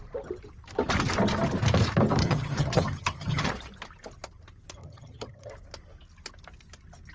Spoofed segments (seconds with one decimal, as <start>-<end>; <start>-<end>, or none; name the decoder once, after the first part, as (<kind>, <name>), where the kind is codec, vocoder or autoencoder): 2.2-3.5 (vocoder, HiFi-GAN); 4.8-5.5